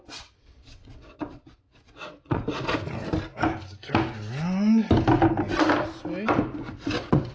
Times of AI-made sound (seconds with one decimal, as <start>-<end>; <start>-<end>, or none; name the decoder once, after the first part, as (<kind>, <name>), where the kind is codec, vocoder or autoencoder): 0.0-2.4 (vocoder, WaveNeXt); 6.8-7.3